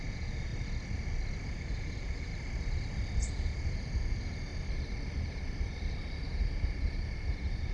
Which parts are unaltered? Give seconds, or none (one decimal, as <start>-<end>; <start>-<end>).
0.5-1.4; 2.3-3.3; 4.5-6.3